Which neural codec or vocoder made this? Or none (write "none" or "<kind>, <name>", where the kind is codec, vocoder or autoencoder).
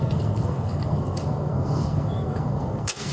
codec, SNAC